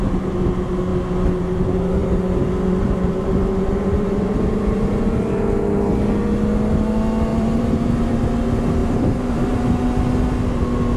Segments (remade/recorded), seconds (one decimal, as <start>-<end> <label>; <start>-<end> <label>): 0.0-2.0 recorded; 2.0-5.0 remade; 5.0-7.3 recorded; 7.3-8.2 remade; 8.2-8.8 recorded; 8.8-9.6 remade; 9.6-11.0 recorded

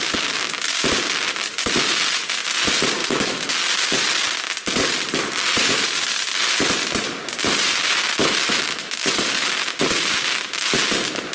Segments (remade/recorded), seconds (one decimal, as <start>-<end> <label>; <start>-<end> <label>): 0.0-3.0 recorded; 3.0-3.5 remade; 3.5-8.2 recorded; 8.2-9.1 remade; 9.1-11.3 recorded